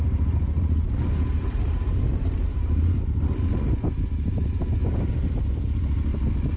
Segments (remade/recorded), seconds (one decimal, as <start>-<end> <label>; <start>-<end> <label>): 0.0-1.3 recorded; 1.3-5.3 remade; 5.3-6.1 recorded; 6.1-6.6 remade